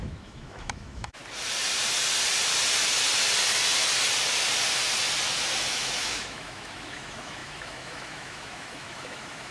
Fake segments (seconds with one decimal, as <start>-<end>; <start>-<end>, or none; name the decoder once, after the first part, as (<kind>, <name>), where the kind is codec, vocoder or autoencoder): 0.0-1.2 (autoencoder, DAC-VAE); 5.7-9.5